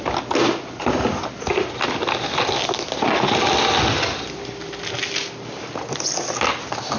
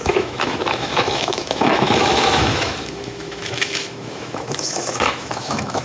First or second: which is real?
first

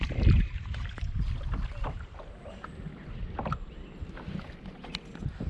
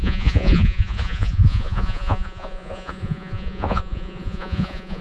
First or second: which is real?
first